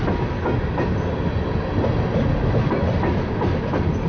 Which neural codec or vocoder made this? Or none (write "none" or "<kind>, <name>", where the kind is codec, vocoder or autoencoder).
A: none